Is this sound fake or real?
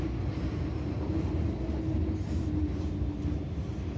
real